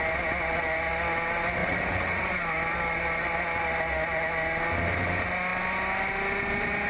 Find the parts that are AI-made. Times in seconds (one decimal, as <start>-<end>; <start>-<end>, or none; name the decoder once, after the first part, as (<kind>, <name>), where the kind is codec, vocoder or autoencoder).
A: 1.6-2.3 (vocoder, Vocos)